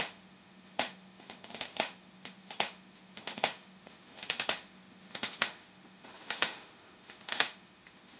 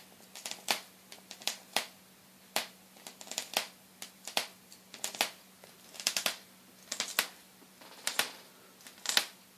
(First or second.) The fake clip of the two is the first